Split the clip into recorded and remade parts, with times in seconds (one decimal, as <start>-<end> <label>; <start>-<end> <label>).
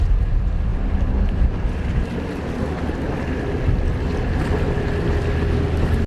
0.0-6.1 recorded